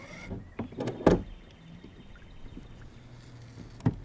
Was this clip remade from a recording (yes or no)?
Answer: no